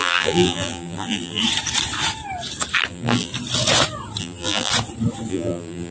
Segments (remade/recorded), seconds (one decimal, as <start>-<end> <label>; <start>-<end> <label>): 0.0-1.4 remade; 1.4-2.9 recorded; 2.9-3.3 remade; 3.3-4.2 recorded; 4.2-4.7 remade; 4.7-5.3 recorded; 5.3-5.9 remade

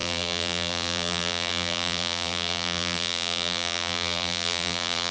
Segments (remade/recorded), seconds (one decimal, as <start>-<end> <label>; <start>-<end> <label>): 0.0-5.1 remade

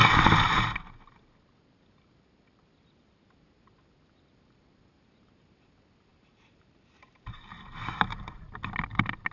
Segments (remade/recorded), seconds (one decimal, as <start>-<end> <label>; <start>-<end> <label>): 0.0-6.1 recorded; 6.1-8.5 remade; 8.5-9.3 recorded

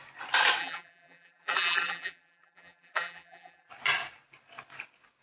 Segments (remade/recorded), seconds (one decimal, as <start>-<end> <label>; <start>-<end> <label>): 0.0-0.6 recorded; 0.6-3.7 remade; 3.7-5.2 recorded

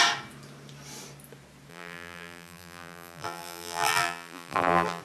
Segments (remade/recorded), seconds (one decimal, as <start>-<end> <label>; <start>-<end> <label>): 0.0-1.7 recorded; 1.7-5.0 remade

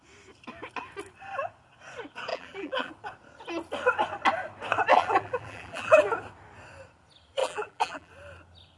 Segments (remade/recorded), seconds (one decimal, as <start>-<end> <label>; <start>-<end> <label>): 0.0-2.3 recorded; 2.3-2.9 remade; 2.9-4.9 recorded; 4.9-6.0 remade; 6.0-7.4 recorded; 7.4-8.1 remade; 8.1-8.8 recorded

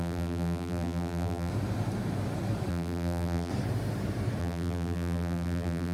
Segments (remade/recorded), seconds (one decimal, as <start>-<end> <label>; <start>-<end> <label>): 0.0-1.5 remade; 1.5-2.7 recorded; 2.7-3.5 remade; 3.5-4.4 recorded; 4.4-5.9 remade

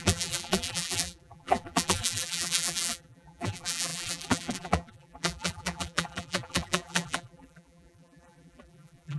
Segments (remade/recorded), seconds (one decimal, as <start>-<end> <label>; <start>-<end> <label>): 0.0-9.2 remade